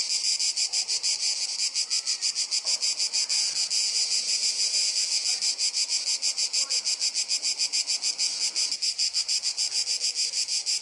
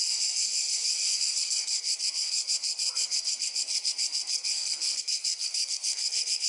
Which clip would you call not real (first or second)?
second